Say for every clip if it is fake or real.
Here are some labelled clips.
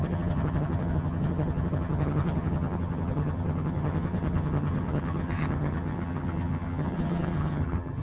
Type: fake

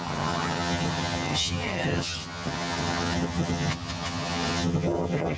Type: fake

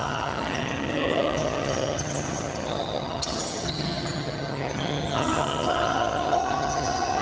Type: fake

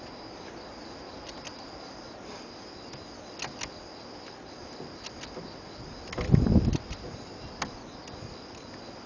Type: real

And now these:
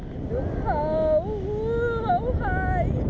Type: real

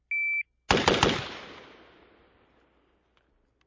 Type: real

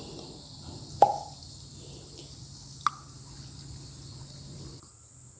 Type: real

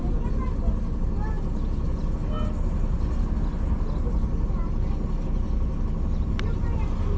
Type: real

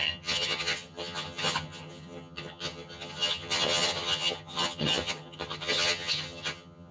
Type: fake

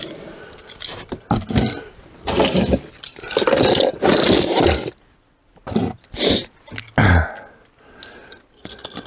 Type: real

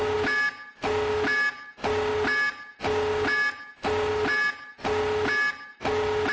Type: real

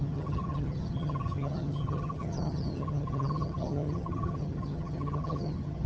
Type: fake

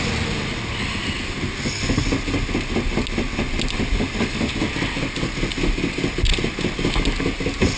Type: real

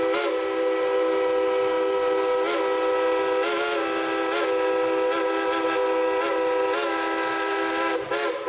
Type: real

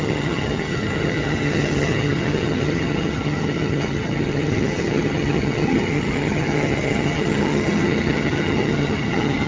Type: fake